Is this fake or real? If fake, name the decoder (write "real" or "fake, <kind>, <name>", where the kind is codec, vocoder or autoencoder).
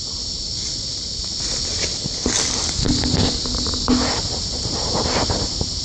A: real